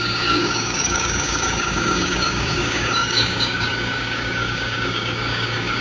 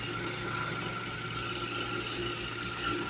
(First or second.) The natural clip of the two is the second